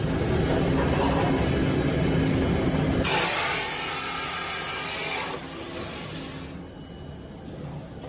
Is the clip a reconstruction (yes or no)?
no